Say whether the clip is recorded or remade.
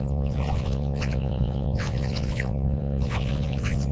remade